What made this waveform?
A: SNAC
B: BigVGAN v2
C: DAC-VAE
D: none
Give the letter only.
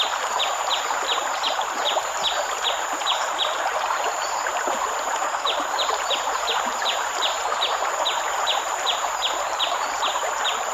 B